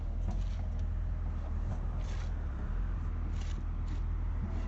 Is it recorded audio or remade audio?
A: recorded